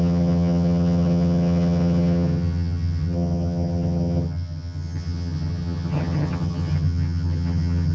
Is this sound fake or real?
fake